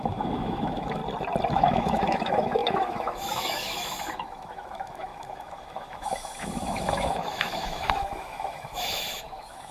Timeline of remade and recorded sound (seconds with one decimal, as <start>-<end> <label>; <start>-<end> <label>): 0.0-1.0 remade; 1.0-1.5 recorded; 1.5-9.7 remade